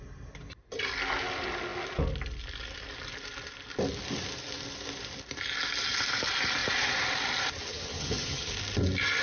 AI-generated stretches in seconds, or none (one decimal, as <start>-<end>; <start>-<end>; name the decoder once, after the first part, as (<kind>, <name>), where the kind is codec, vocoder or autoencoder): 7.7-8.5 (vocoder, HiFi-GAN)

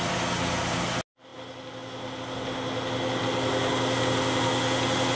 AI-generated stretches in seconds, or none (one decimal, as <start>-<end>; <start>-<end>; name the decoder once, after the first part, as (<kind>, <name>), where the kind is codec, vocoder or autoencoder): none

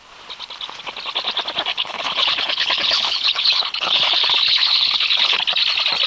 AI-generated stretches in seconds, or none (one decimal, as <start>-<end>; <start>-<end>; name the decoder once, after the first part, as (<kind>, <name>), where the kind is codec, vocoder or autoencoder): 1.7-5.4 (codec, HILCodec)

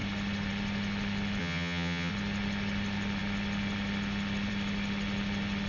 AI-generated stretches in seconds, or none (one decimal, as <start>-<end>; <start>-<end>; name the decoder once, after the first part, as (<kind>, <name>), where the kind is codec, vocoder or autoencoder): 1.4-2.1 (vocoder, HiFi-GAN)

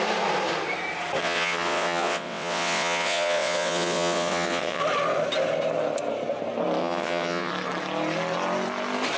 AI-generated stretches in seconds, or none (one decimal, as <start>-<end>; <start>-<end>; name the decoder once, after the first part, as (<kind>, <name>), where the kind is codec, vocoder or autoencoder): 1.2-4.8 (vocoder, WaveNeXt); 6.8-7.5